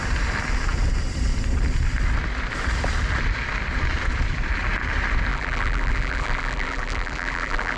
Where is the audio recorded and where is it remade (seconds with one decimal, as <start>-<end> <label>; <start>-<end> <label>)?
0.0-5.3 recorded; 5.3-7.8 remade